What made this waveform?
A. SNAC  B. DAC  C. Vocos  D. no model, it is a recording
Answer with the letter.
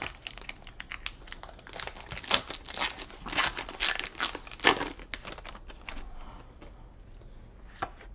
D